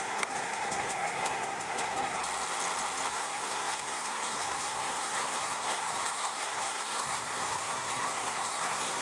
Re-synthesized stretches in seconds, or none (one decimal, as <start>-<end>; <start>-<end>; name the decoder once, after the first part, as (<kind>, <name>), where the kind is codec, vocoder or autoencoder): 0.0-2.2 (codec, SNAC); 3.1-9.0